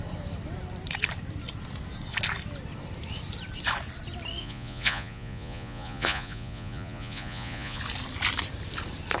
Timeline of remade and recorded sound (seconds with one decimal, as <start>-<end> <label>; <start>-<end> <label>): 0.0-4.4 recorded; 4.4-7.8 remade; 7.8-9.2 recorded